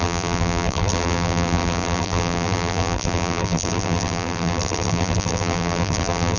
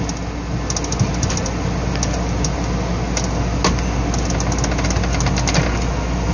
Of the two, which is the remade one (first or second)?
first